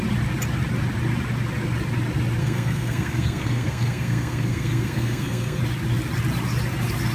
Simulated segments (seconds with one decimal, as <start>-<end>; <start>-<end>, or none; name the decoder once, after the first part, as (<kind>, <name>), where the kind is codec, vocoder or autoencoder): 2.4-5.6 (codec, SNAC)